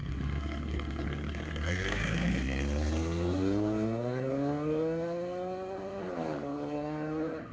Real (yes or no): no